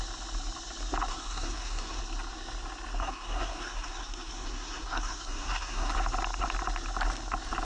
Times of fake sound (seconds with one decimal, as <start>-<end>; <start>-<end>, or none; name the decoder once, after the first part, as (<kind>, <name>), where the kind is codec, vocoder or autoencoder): 1.1-2.0 (codec, SNAC); 3.0-5.9